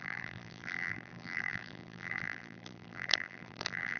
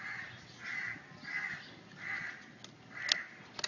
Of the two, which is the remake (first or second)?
first